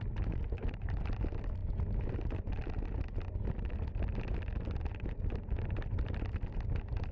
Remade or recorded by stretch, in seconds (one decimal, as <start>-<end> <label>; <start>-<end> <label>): 0.0-7.1 recorded